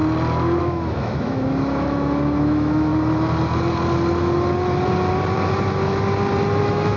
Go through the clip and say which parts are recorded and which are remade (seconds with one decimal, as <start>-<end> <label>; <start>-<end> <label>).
0.0-0.6 recorded; 0.6-2.9 remade; 2.9-6.6 recorded; 6.6-7.0 remade